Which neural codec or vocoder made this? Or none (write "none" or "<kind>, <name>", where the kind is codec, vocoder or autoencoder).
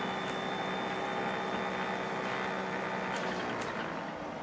none